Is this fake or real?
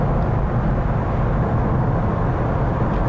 real